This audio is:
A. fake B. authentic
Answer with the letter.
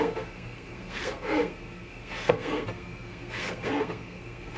A